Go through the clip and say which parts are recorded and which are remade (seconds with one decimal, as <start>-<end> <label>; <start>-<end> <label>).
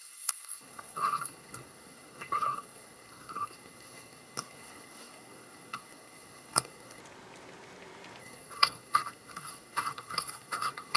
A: 0.0-7.0 remade; 7.0-8.2 recorded; 8.2-11.0 remade